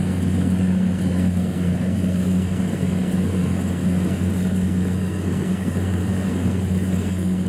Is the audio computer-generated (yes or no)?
yes